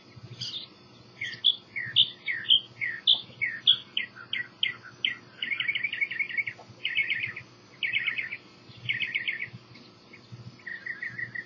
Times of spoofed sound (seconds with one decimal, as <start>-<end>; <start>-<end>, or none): none